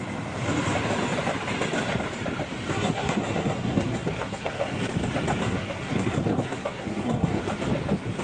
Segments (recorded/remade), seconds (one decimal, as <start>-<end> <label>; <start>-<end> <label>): 0.0-2.7 recorded; 2.7-4.8 remade; 4.8-5.4 recorded; 5.4-7.4 remade; 7.4-8.2 recorded

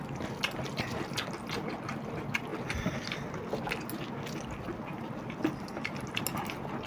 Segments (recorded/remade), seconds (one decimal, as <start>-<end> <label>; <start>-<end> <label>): 0.0-6.9 recorded

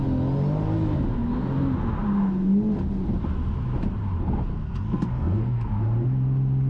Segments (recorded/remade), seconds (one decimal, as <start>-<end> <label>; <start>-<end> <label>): 0.0-4.5 recorded; 4.5-5.8 remade; 5.8-6.7 recorded

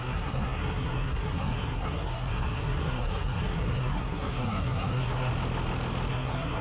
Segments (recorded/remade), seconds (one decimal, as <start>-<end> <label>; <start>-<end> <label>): 0.0-5.3 remade; 5.3-6.1 recorded; 6.1-6.6 remade